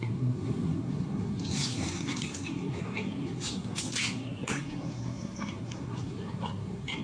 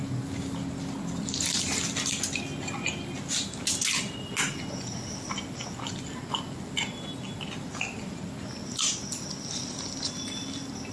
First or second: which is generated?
first